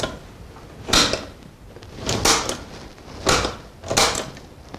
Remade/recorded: recorded